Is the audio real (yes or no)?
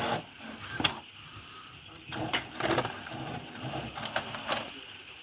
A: yes